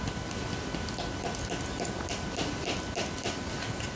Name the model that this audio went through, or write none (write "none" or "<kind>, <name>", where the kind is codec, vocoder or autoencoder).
none